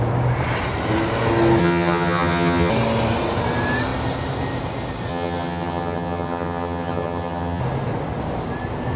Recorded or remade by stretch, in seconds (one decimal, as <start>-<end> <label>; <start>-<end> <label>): 0.0-1.6 recorded; 1.6-2.7 remade; 2.7-5.1 recorded; 5.1-7.6 remade; 7.6-9.0 recorded